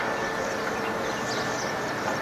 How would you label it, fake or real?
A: real